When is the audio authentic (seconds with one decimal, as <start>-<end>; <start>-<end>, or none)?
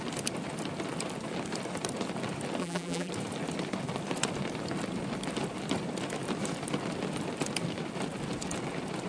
0.0-2.6; 3.1-9.1